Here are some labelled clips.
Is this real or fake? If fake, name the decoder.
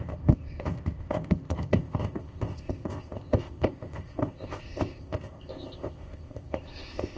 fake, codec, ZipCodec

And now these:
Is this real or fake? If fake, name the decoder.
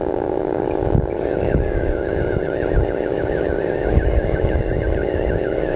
fake, codec, DAC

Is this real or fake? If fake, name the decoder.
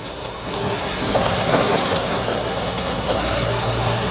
fake, codec, SNAC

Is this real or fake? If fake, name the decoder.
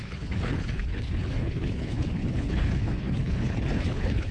fake, codec, HILCodec